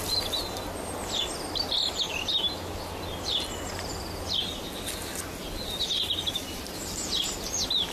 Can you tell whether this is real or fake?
real